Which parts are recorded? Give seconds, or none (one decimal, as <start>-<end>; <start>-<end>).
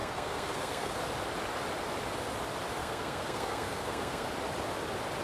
1.0-2.8; 4.3-5.2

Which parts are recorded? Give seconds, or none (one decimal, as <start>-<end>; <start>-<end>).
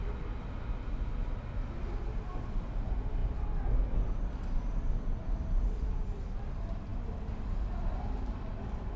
0.0-9.0